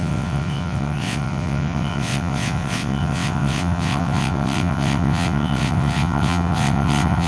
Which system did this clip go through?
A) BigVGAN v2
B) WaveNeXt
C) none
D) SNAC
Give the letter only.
B